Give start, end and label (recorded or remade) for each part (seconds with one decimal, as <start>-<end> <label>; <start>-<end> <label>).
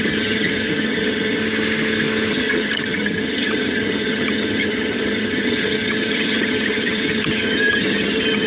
0.0-1.4 remade; 1.4-2.3 recorded; 2.3-8.5 remade